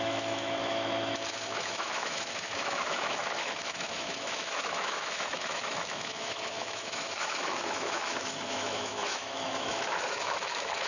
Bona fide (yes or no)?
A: no